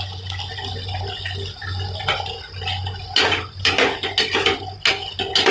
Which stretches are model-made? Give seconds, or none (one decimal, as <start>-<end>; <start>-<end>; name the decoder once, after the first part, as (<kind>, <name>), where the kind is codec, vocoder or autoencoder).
none